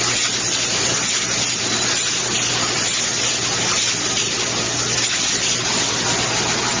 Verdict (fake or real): real